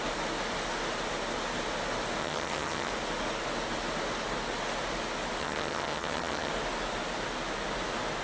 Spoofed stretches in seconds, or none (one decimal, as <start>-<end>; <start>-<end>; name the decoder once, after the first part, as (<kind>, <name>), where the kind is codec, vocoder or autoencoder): 2.2-2.9 (vocoder, HiFi-GAN); 5.4-6.5